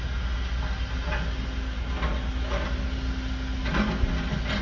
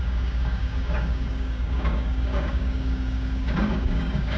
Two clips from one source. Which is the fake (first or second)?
second